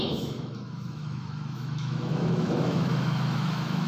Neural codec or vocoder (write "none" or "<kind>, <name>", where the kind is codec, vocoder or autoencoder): autoencoder, DAC-VAE